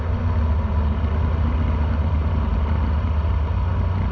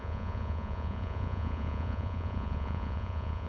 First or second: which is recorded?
first